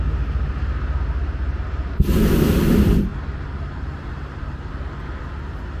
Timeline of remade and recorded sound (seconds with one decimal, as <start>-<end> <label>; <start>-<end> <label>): 0.0-3.1 recorded; 3.1-4.7 remade; 4.7-5.8 recorded